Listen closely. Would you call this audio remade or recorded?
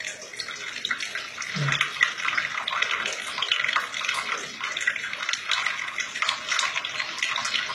recorded